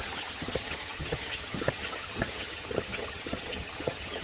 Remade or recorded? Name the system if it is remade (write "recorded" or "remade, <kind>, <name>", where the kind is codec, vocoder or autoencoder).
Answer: remade, vocoder, HiFi-GAN